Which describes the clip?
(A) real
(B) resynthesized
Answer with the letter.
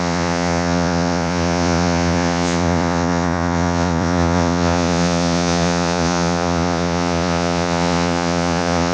B